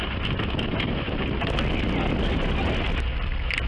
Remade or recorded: recorded